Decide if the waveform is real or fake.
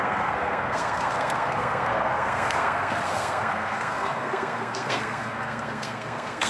fake